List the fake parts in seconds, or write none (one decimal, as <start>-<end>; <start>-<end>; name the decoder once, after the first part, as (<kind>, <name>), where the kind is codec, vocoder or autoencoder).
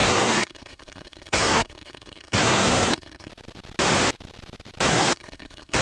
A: 0.0-3.3 (codec, SNAC); 4.9-5.8